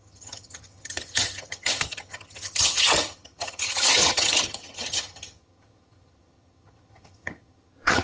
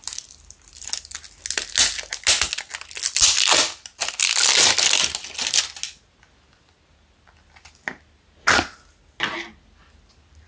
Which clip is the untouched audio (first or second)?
second